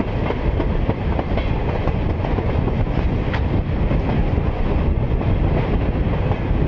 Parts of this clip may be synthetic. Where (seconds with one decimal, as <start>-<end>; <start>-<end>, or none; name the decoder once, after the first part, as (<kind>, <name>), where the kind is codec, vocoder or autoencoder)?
1.4-3.2 (vocoder, Vocos); 4.2-5.4